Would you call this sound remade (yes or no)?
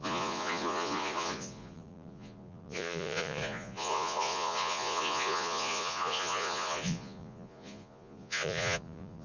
yes